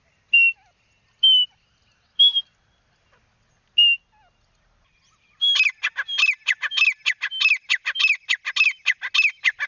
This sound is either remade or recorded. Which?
recorded